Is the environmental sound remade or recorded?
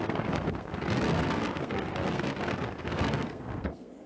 remade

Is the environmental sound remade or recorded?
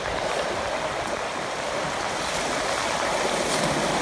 recorded